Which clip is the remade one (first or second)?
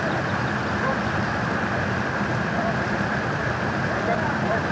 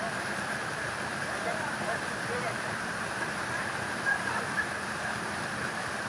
second